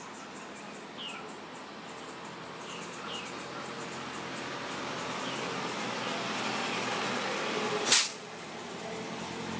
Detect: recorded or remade recorded